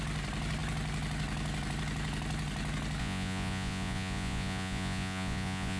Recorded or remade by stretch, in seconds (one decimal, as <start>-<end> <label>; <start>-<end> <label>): 0.0-3.0 recorded; 3.0-5.8 remade